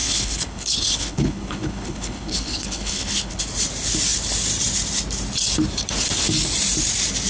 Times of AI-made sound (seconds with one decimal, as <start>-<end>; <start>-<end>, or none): 0.0-3.4